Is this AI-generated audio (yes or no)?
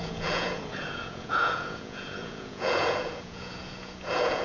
yes